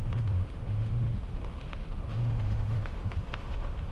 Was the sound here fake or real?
fake